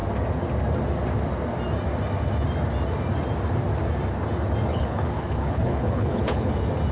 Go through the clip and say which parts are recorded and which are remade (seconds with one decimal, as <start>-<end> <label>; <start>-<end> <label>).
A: 0.0-4.7 recorded; 4.7-6.5 remade; 6.5-6.9 recorded